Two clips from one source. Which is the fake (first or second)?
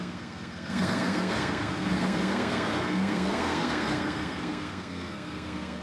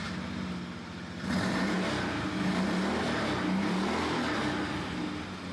first